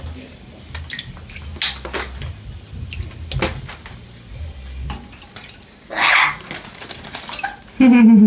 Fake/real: real